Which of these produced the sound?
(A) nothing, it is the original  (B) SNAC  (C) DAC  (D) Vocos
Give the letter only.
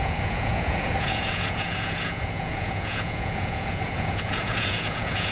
D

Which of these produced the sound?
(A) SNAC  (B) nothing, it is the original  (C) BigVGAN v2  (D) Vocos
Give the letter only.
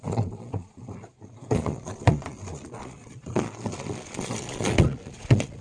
D